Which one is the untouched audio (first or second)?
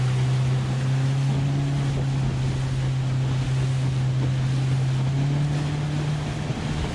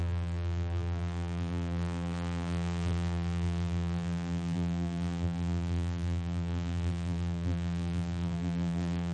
first